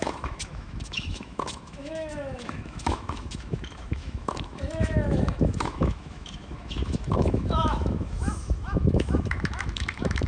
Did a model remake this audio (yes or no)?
yes